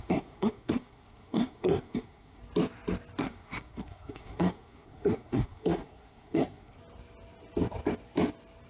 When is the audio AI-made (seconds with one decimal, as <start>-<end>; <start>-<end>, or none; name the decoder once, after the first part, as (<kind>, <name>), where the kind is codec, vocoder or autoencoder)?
0.0-2.4 (codec, SNAC); 3.2-6.8